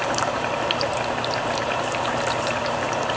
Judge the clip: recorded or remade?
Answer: remade